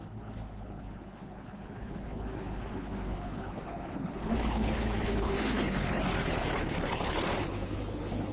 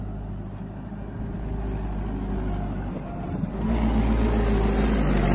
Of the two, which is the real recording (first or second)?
second